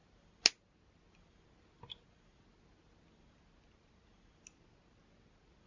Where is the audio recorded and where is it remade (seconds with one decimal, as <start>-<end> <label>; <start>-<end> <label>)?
0.0-5.7 recorded